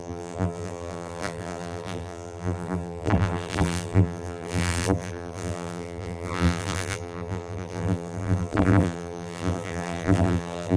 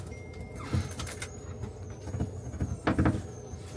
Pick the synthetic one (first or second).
first